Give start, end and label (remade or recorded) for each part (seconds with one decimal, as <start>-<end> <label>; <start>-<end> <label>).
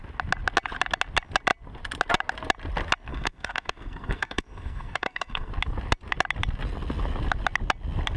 0.0-3.1 recorded; 3.1-5.5 remade; 5.5-8.2 recorded